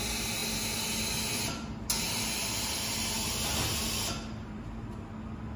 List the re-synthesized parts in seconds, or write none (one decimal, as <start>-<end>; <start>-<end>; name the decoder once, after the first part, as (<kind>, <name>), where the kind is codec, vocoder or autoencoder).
4.4-5.1 (vocoder, BigVGAN v2)